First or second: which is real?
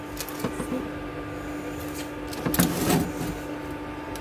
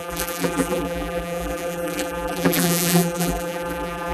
first